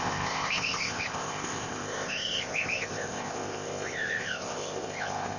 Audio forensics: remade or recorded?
remade